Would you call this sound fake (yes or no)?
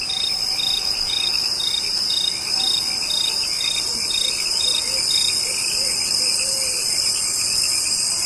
yes